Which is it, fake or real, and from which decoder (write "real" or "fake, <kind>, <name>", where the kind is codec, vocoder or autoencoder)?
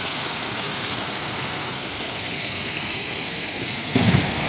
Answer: fake, codec, SNAC